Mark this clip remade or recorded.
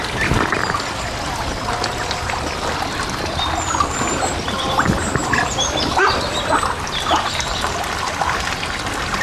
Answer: recorded